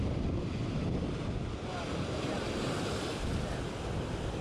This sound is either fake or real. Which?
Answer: real